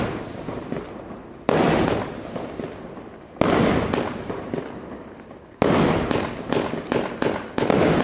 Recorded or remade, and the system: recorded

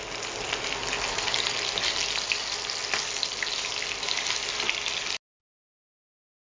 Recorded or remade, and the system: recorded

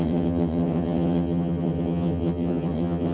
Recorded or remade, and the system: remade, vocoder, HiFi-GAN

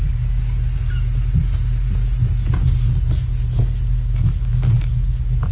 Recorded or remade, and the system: recorded